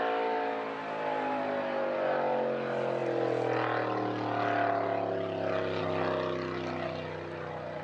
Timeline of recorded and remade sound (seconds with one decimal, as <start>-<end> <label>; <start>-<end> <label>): 0.0-7.8 recorded